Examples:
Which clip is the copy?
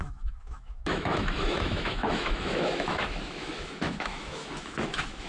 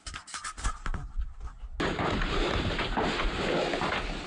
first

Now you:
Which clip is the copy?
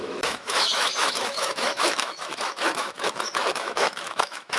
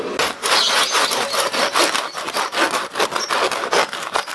first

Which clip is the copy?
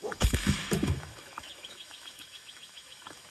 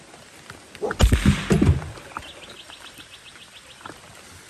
first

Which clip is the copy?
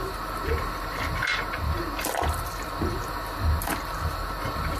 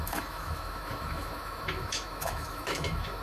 second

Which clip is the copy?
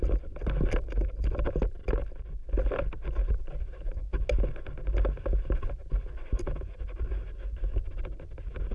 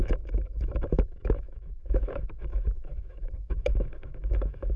second